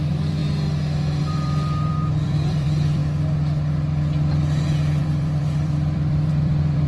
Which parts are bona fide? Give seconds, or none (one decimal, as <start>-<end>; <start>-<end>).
0.4-1.2; 3.0-5.0